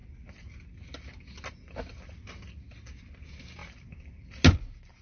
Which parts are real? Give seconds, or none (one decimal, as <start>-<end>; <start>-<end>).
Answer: 0.0-5.0